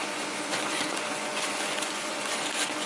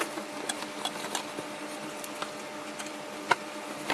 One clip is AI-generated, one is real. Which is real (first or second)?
second